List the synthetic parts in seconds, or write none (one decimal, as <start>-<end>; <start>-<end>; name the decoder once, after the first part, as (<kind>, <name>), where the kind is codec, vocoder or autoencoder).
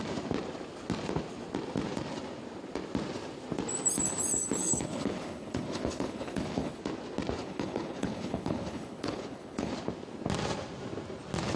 4.6-6.8 (codec, HILCodec); 7.4-9.7